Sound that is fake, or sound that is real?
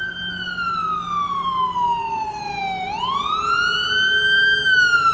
real